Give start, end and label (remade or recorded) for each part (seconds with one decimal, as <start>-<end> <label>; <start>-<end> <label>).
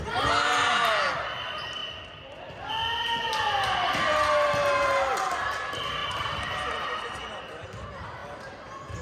0.0-9.0 recorded